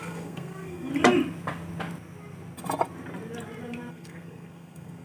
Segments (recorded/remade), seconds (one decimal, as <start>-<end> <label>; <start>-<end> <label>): 0.0-0.9 remade; 0.9-3.9 recorded; 3.9-5.0 remade